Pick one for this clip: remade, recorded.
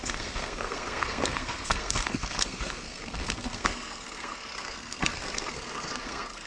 remade